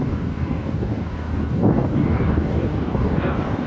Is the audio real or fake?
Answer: fake